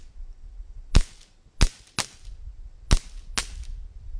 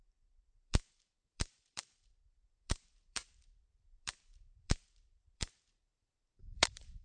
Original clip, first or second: first